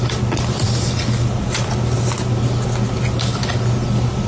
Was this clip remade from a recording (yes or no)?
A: no